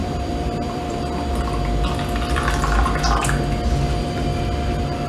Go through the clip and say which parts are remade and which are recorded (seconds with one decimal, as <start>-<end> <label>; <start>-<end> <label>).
0.0-1.0 remade; 1.0-5.1 recorded